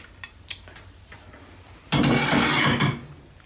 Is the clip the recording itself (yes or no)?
yes